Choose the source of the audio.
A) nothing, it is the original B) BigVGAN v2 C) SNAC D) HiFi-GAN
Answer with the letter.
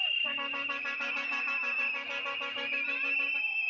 A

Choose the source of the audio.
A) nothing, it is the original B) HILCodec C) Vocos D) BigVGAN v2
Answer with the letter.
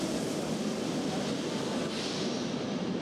A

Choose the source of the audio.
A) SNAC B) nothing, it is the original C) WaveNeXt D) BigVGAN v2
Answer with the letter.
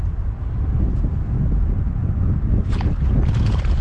B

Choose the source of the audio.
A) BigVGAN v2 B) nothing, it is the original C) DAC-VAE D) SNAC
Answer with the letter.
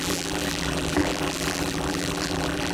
A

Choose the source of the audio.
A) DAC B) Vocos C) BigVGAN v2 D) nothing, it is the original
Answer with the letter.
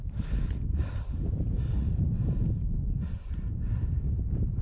C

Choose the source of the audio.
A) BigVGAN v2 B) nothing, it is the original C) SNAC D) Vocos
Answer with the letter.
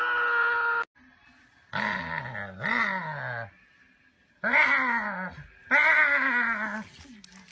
B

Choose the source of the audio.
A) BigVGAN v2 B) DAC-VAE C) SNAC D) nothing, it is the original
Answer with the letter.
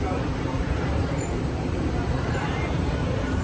A